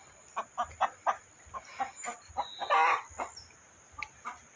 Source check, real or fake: real